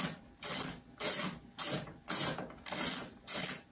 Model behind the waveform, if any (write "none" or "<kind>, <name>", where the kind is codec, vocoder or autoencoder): none